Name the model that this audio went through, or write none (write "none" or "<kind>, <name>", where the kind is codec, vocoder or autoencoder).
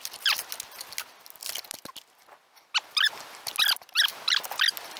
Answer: none